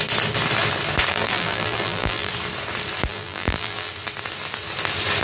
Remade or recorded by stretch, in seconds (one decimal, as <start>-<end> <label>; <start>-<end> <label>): 0.0-1.1 recorded; 1.1-2.3 remade; 2.3-3.1 recorded; 3.1-3.9 remade; 3.9-5.2 recorded